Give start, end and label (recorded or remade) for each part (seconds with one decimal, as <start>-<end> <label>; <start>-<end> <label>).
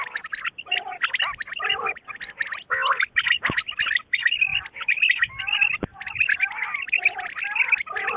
0.0-8.2 recorded